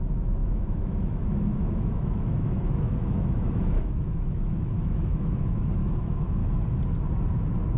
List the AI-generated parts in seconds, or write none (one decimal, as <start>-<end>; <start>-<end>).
0.0-6.4